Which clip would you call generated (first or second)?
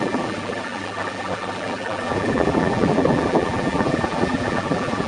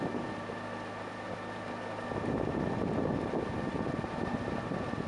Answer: first